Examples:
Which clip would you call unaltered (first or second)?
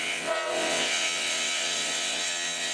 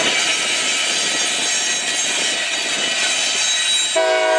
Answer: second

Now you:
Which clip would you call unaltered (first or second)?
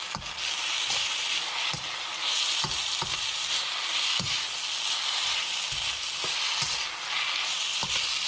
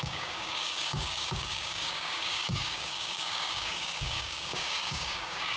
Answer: first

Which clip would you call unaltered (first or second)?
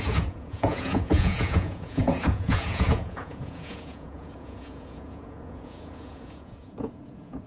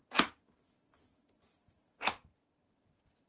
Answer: second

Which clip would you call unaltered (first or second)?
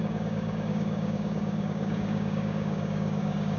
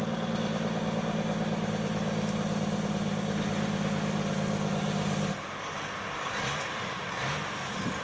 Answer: second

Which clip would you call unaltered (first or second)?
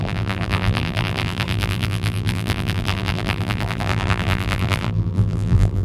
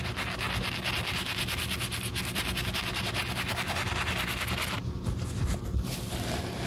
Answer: second